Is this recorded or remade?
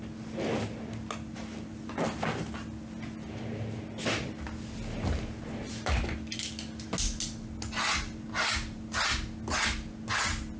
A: recorded